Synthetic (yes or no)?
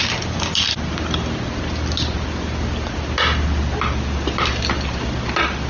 no